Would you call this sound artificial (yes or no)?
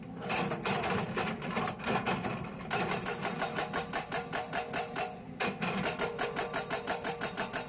no